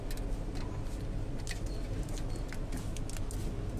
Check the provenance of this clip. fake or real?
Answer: real